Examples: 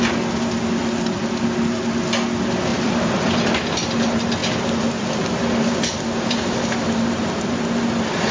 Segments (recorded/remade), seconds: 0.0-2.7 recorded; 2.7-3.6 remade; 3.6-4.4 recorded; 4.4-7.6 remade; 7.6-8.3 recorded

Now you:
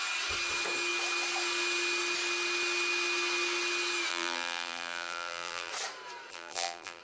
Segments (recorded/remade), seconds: 0.0-4.1 recorded; 4.1-5.7 remade; 5.7-6.3 recorded; 6.3-7.0 remade

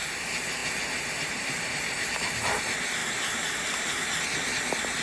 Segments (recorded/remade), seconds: 0.0-3.0 recorded; 3.0-4.2 remade; 4.2-5.0 recorded

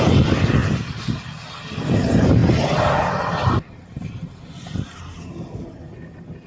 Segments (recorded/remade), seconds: 0.0-6.5 recorded

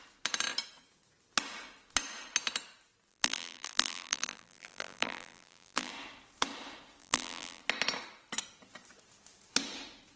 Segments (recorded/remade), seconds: 0.0-3.1 recorded; 3.1-5.9 remade; 5.9-7.0 recorded; 7.0-7.6 remade; 7.6-10.2 recorded

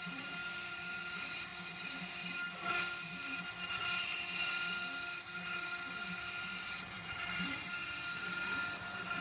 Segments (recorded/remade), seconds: 0.0-0.4 remade; 0.4-1.0 recorded; 1.0-1.5 remade; 1.5-6.6 recorded; 6.6-9.2 remade

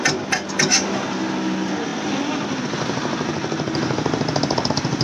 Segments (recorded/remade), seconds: 0.0-5.0 recorded

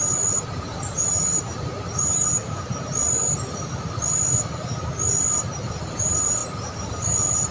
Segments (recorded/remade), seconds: 0.0-2.4 remade; 2.4-5.9 recorded; 5.9-7.5 remade